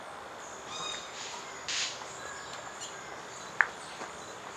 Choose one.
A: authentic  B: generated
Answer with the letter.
A